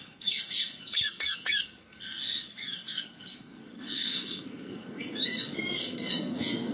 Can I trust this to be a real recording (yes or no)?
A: no